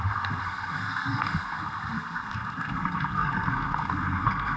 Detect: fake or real fake